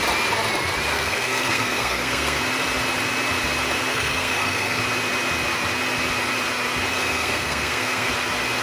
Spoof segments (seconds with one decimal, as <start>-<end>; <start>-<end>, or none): 0.9-2.4; 3.9-4.8; 6.9-8.1